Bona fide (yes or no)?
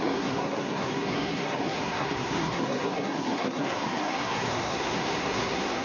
no